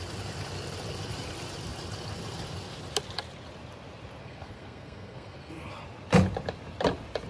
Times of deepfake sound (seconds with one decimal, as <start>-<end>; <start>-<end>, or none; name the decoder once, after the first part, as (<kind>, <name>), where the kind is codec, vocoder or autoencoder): 4.2-5.7 (codec, SNAC)